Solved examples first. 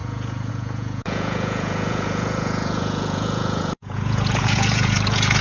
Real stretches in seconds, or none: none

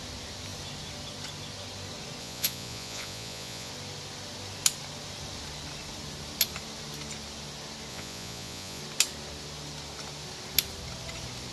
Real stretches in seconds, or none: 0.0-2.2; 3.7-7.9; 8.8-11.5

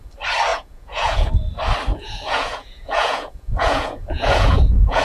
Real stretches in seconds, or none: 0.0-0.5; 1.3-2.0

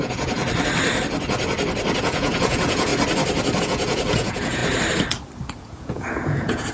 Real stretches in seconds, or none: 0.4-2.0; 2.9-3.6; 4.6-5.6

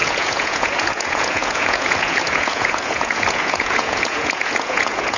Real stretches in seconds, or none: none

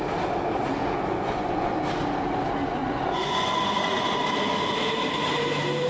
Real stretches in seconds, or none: 0.0-0.8; 1.7-2.8; 4.1-5.9